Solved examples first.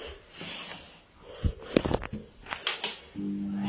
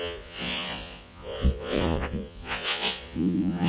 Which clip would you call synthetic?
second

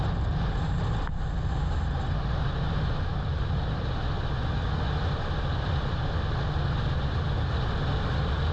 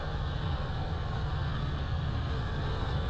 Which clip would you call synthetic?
second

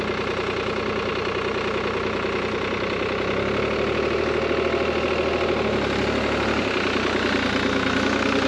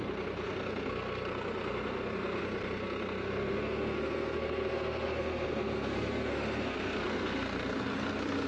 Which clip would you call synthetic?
second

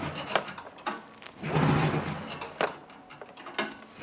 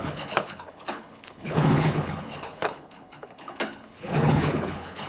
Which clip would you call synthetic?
second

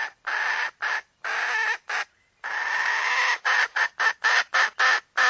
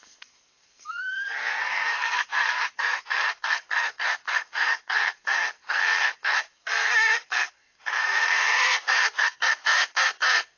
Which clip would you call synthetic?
second